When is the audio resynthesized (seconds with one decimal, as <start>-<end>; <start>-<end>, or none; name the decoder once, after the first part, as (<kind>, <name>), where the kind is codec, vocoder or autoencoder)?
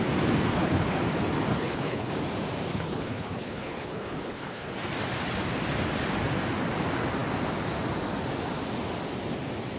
0.5-1.0 (codec, HILCodec); 1.5-2.1; 2.7-4.7